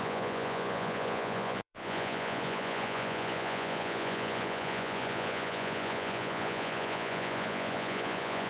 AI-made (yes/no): yes